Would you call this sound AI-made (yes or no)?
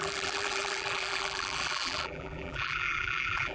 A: yes